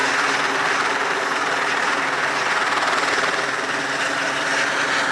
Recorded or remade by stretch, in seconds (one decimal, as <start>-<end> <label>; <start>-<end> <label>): 0.0-5.1 recorded